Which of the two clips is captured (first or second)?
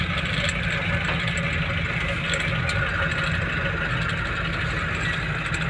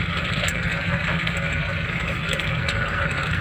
first